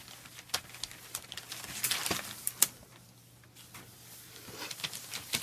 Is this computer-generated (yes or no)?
no